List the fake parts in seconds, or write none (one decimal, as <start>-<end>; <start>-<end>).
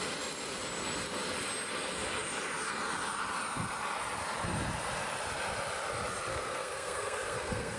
6.3-7.8